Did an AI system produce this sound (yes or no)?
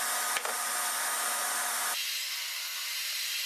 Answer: no